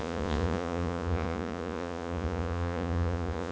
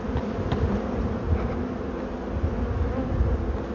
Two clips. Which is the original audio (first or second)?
second